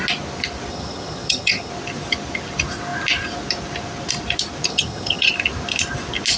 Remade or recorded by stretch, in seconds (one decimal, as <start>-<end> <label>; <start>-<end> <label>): 0.0-0.7 recorded; 0.7-1.7 remade; 1.7-4.7 recorded; 4.7-5.3 remade; 5.3-6.4 recorded